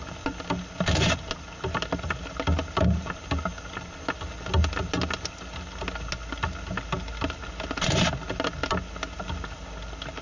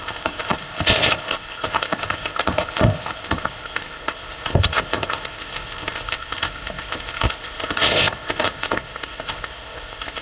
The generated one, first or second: second